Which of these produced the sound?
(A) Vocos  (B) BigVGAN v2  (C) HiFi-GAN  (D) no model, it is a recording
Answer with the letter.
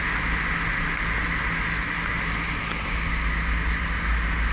D